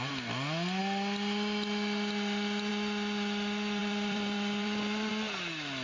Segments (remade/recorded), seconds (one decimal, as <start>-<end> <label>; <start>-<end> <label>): 0.0-3.8 recorded; 3.8-5.1 remade; 5.1-5.8 recorded